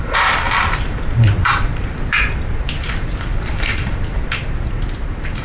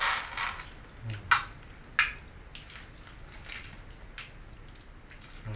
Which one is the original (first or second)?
second